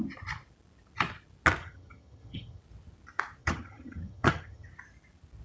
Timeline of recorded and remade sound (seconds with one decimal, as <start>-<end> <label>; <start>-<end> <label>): 0.0-1.6 recorded; 1.6-2.6 remade; 2.6-3.4 recorded; 3.4-4.7 remade; 4.7-5.4 recorded